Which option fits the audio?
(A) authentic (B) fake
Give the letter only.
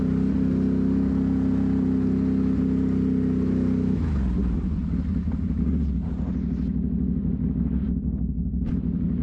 A